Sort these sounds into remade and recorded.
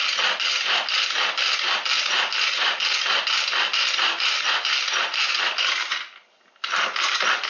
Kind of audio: recorded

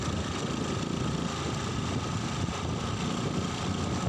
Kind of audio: recorded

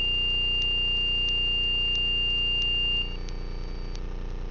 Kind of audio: recorded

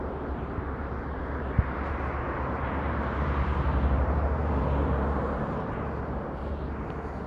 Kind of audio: remade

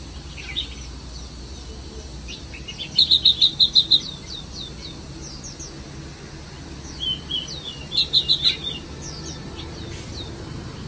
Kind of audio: recorded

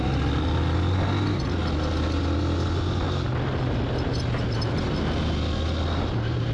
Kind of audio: recorded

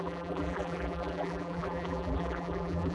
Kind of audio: remade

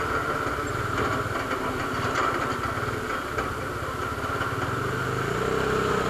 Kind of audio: recorded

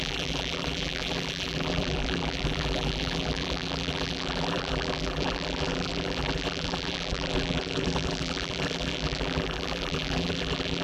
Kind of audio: remade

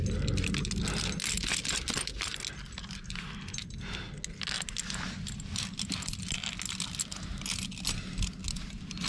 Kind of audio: recorded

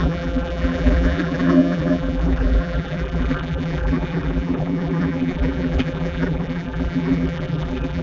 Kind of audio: remade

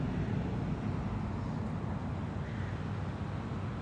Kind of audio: recorded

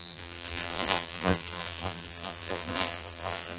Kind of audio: remade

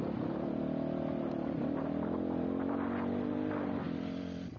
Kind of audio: recorded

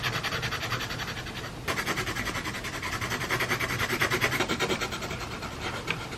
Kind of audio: recorded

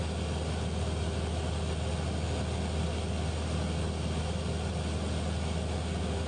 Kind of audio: recorded